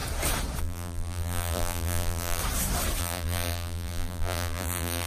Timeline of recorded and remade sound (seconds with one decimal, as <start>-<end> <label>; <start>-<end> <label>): 0.0-0.6 recorded; 0.6-2.4 remade; 2.4-3.0 recorded; 3.0-5.1 remade